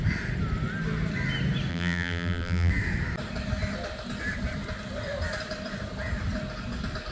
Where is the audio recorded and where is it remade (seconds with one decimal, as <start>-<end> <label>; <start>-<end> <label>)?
0.0-1.7 recorded; 1.7-2.7 remade; 2.7-7.1 recorded

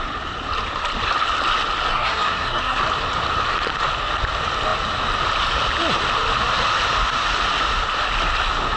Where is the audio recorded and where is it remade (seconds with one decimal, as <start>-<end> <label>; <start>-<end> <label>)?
0.0-1.9 recorded; 1.9-2.8 remade; 2.8-8.8 recorded

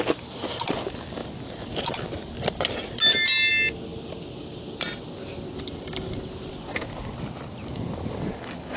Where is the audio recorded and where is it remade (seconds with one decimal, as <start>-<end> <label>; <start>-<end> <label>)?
0.0-8.8 recorded

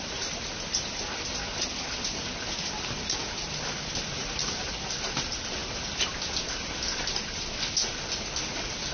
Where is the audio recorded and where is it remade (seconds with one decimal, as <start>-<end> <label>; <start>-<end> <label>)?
0.0-8.9 recorded

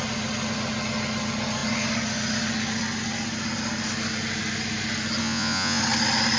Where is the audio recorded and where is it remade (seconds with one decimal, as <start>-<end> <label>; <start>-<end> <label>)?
0.0-5.2 recorded; 5.2-5.8 remade; 5.8-6.4 recorded

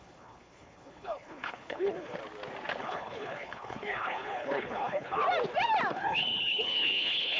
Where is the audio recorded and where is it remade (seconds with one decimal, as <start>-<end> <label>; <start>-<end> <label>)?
0.0-2.2 remade; 2.2-2.8 recorded; 2.8-5.2 remade; 5.2-5.9 recorded; 5.9-7.4 remade